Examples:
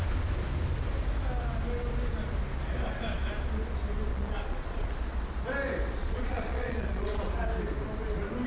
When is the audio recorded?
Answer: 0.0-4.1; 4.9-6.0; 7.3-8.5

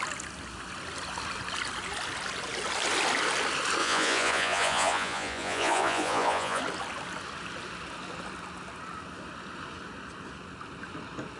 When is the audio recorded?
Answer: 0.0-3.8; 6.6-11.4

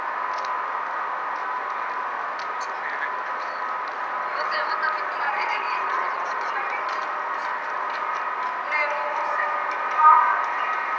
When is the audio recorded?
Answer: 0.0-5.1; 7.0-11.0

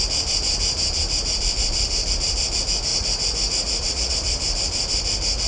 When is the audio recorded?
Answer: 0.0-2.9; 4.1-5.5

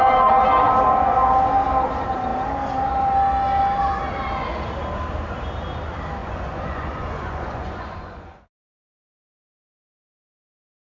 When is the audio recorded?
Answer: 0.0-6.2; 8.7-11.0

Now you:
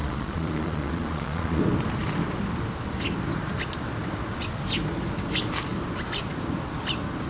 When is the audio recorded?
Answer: 1.6-7.3